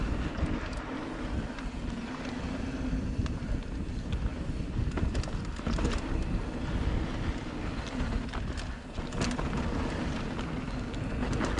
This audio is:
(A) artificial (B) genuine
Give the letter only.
B